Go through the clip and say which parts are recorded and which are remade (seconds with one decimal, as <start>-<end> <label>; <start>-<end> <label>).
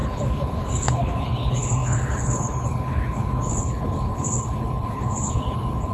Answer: 0.0-5.9 remade